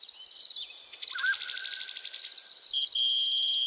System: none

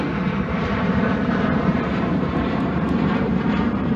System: vocoder, BigVGAN v2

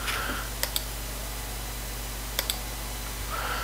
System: none